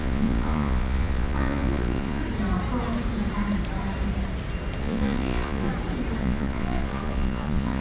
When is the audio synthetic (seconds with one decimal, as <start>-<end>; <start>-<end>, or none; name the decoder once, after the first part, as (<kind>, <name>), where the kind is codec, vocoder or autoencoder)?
0.0-2.2 (vocoder, Vocos); 4.8-5.7; 6.2-7.8